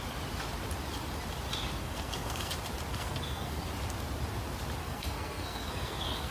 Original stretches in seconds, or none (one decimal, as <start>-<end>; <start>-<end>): 0.0-1.8; 2.5-2.9; 3.6-4.8